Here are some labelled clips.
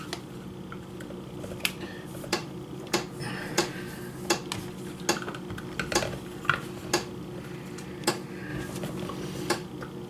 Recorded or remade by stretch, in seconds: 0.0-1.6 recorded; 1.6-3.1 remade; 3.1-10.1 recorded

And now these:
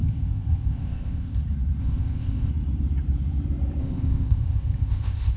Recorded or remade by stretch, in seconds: 0.0-1.4 remade; 1.4-1.8 recorded; 1.8-2.5 remade; 2.5-3.8 recorded; 3.8-5.4 remade